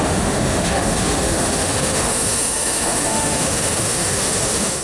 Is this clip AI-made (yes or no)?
yes